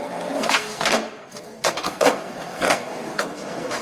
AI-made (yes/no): yes